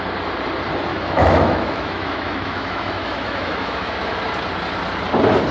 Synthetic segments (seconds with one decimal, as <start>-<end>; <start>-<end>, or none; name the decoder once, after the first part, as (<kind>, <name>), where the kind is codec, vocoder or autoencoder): 0.9-4.2 (autoencoder, DAC-VAE)